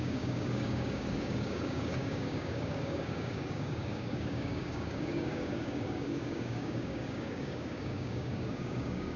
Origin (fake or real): fake